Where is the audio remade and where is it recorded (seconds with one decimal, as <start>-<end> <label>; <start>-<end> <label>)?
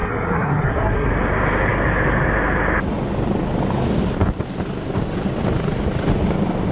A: 0.0-1.1 remade; 1.1-6.7 recorded